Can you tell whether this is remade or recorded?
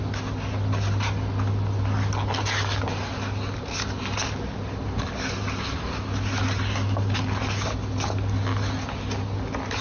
recorded